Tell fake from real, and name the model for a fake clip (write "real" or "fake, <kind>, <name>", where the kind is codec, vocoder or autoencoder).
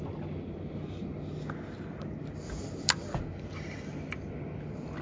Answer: real